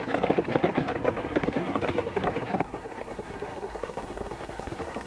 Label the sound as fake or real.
fake